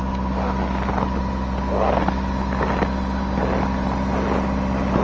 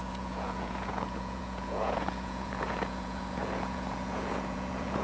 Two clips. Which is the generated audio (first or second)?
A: second